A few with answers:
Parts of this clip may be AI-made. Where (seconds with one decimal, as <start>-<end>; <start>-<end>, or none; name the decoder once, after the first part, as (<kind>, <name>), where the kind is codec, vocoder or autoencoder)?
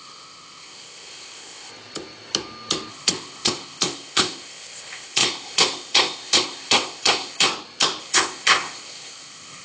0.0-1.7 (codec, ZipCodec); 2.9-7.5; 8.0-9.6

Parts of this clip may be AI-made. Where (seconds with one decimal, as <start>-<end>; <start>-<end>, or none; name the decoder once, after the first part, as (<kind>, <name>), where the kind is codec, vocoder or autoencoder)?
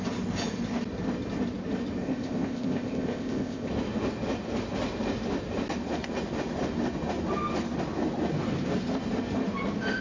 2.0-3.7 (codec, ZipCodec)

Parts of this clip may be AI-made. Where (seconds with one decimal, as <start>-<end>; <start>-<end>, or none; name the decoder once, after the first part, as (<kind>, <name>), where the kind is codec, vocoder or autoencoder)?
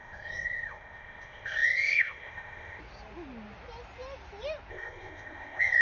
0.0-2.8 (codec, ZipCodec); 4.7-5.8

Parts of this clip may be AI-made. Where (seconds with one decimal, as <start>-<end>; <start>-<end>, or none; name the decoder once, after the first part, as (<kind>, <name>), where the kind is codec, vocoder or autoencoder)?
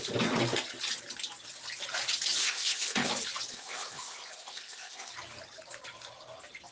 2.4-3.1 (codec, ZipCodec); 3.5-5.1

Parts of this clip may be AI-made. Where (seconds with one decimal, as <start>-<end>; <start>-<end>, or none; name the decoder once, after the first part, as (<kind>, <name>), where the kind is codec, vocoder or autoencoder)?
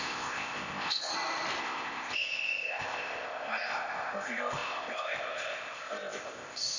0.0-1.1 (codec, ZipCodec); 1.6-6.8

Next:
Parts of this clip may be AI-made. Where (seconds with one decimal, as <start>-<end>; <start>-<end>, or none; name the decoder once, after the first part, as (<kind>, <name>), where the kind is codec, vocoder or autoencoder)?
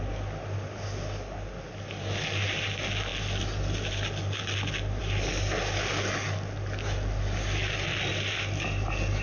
none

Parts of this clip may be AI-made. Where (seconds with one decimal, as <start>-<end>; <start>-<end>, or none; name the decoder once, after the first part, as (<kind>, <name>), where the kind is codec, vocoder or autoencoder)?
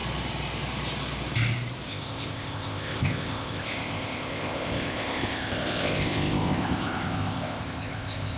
1.9-8.4 (codec, ZipCodec)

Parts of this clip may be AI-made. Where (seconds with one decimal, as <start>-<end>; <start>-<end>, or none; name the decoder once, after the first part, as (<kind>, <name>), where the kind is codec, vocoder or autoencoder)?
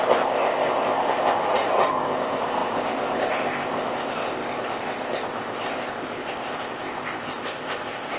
0.0-1.4 (codec, ZipCodec); 1.9-8.2